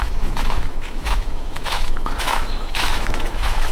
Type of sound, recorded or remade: remade